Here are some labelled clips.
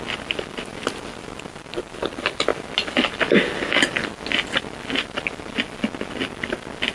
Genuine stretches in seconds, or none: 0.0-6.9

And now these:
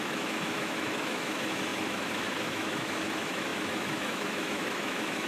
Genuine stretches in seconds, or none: none